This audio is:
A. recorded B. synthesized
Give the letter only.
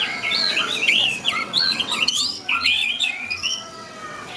B